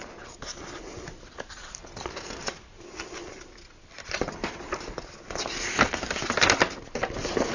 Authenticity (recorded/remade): recorded